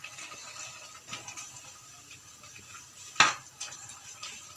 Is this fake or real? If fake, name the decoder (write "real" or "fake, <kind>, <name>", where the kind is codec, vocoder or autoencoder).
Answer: fake, vocoder, BigVGAN v2